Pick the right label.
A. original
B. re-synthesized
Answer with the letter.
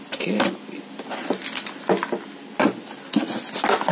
A